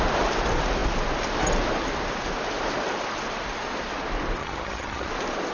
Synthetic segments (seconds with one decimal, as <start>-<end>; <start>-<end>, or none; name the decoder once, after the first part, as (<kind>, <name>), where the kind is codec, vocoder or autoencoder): 4.4-5.1 (vocoder, HiFi-GAN)